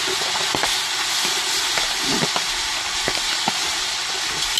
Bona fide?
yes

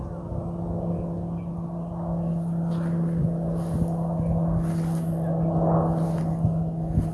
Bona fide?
yes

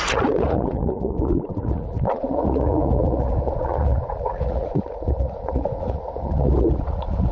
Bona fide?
no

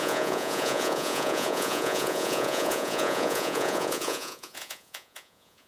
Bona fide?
no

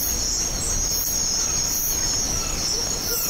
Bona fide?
yes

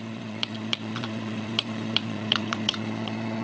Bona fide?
no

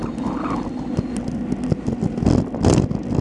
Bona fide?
yes